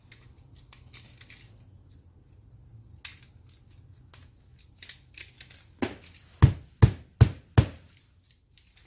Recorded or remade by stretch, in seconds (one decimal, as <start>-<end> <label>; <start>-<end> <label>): 0.0-8.9 recorded